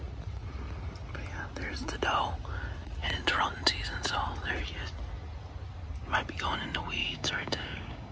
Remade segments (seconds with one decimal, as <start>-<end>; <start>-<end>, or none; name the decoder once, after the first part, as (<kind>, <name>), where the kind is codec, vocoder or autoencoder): 7.0-8.1 (codec, DAC)